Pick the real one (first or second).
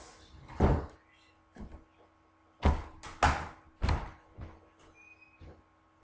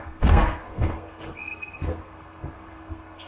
first